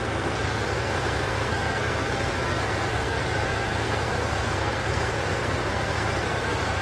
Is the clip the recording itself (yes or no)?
no